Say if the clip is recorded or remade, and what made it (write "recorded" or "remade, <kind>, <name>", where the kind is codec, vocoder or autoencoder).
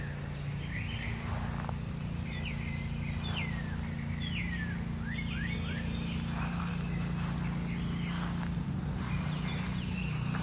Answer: recorded